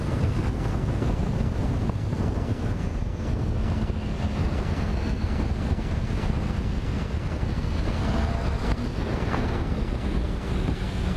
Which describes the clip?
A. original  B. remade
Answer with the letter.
B